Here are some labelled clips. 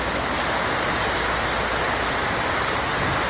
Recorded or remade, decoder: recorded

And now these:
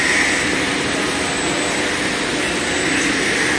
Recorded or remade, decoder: recorded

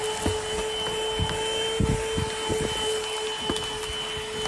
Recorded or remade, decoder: recorded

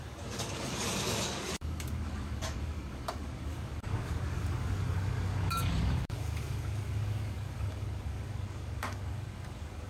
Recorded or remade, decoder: remade, codec, DAC